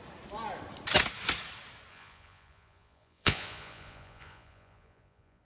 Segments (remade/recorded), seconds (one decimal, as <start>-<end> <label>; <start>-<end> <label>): 0.0-1.9 recorded; 1.9-5.4 remade